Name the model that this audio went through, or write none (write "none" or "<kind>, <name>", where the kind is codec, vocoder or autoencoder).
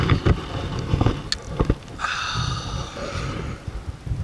none